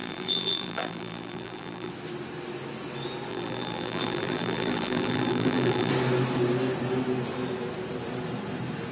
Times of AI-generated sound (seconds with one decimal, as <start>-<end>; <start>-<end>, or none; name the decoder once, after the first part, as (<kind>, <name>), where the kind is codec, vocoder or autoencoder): 0.0-1.9 (vocoder, BigVGAN v2); 3.3-5.9